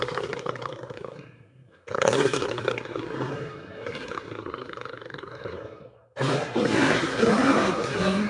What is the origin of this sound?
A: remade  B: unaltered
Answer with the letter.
A